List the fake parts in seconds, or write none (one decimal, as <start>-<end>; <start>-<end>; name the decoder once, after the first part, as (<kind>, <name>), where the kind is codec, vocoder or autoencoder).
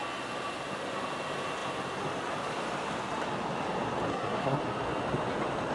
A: 4.1-4.6 (codec, SNAC)